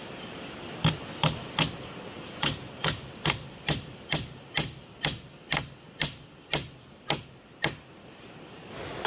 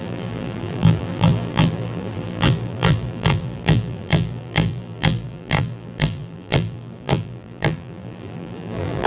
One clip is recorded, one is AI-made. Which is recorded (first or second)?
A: first